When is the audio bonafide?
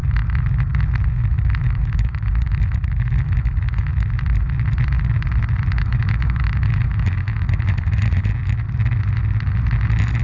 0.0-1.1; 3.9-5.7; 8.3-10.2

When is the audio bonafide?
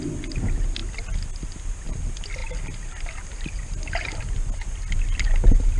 0.0-5.8